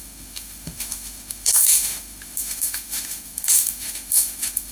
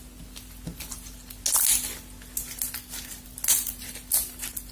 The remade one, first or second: first